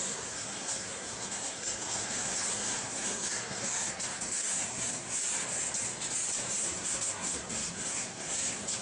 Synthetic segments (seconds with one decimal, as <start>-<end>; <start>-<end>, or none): 0.0-5.2; 6.6-8.8